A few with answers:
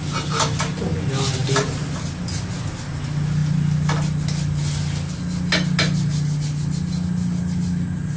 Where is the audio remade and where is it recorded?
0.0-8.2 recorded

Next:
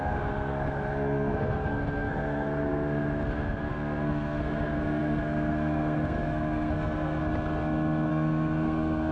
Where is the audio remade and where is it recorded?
0.0-7.2 remade; 7.2-8.1 recorded; 8.1-9.1 remade

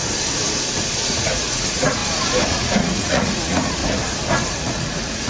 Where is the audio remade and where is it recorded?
0.0-1.0 recorded; 1.0-2.0 remade; 2.0-2.5 recorded; 2.5-3.8 remade; 3.8-4.5 recorded; 4.5-5.3 remade

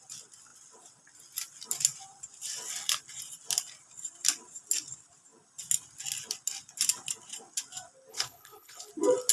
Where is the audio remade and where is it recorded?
0.0-8.1 recorded; 8.1-8.9 remade; 8.9-9.3 recorded

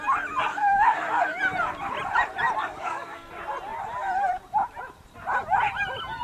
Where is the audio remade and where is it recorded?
0.0-0.5 recorded; 0.5-1.4 remade; 1.4-2.6 recorded; 2.6-3.3 remade; 3.3-6.2 recorded